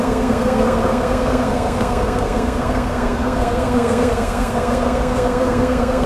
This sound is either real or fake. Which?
fake